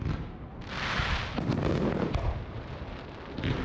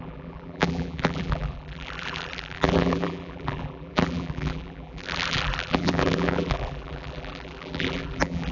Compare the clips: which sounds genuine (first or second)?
first